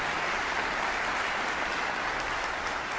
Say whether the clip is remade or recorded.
recorded